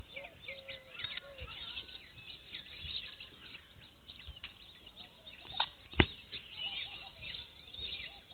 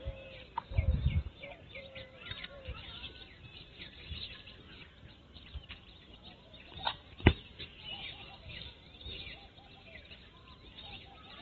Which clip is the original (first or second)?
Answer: first